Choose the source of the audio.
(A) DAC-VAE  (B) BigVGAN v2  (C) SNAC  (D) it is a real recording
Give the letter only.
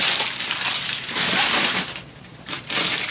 B